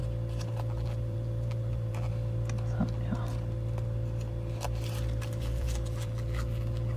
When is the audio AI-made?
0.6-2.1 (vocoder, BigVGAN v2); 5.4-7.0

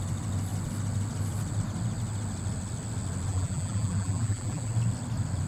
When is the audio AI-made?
3.3-4.7 (vocoder, BigVGAN v2)

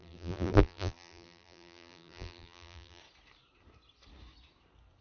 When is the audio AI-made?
0.0-3.0 (vocoder, BigVGAN v2)

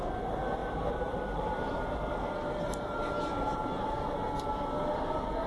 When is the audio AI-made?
0.6-3.9 (vocoder, BigVGAN v2)

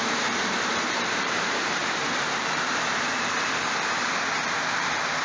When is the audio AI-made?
0.0-1.8 (vocoder, BigVGAN v2)

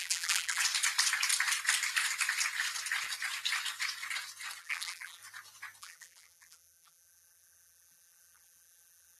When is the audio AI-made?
0.0-0.6 (vocoder, BigVGAN v2); 4.6-5.2; 5.8-9.2

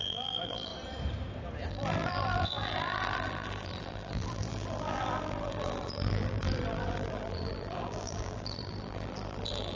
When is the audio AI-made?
0.0-0.7 (vocoder, BigVGAN v2); 1.7-9.8

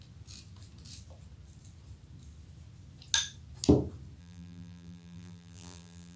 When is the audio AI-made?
4.2-6.2 (vocoder, BigVGAN v2)